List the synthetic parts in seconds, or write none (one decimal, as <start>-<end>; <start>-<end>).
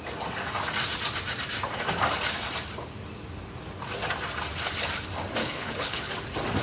5.4-6.1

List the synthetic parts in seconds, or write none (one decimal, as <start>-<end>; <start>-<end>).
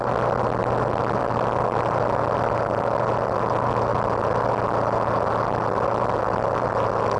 none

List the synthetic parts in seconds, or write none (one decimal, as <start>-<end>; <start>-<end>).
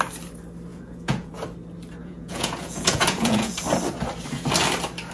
0.7-1.3; 2.0-3.6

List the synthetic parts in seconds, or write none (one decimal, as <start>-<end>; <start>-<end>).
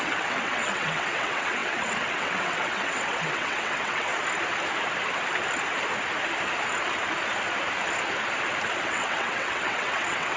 0.0-4.1; 8.8-10.4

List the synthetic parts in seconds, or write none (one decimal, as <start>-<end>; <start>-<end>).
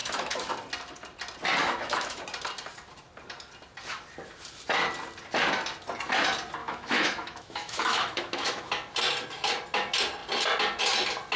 0.0-0.5; 1.6-2.2; 6.6-8.7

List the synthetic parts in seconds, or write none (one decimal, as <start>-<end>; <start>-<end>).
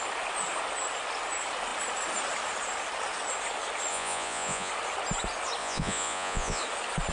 3.9-4.7; 5.6-6.6